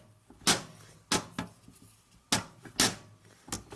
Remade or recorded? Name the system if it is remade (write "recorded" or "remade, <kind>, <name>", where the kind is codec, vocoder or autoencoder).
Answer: recorded